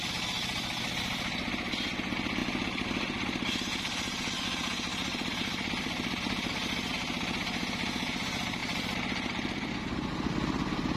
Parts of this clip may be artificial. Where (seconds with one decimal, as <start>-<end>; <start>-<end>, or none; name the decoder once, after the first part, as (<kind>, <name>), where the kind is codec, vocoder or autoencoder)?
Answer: 4.9-6.9 (vocoder, BigVGAN v2); 8.6-10.1

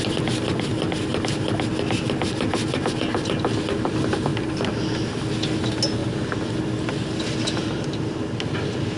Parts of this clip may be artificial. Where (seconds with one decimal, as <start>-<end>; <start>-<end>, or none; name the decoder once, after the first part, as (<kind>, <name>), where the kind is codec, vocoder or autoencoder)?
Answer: none

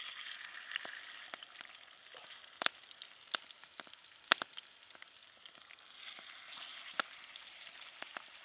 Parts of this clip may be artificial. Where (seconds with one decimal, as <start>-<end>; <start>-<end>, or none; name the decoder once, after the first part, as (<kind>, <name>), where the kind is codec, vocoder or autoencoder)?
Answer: 6.7-7.8 (vocoder, BigVGAN v2)

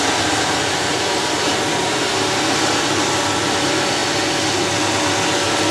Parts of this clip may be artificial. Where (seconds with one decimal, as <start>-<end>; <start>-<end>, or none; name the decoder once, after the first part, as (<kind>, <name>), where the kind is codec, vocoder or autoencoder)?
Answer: 0.0-2.1 (vocoder, BigVGAN v2); 3.3-4.0